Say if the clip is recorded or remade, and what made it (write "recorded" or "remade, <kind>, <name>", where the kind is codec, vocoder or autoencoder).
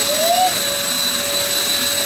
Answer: recorded